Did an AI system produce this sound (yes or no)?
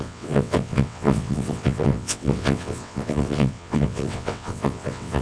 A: yes